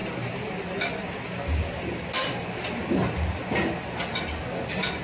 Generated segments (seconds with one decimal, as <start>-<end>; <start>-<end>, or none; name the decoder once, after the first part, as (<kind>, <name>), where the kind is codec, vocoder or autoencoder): none